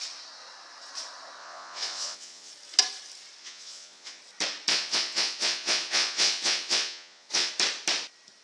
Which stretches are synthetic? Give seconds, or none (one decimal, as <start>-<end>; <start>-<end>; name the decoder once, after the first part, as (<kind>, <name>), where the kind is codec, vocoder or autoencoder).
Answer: 1.4-2.5 (vocoder, Vocos); 3.4-4.2; 4.7-7.5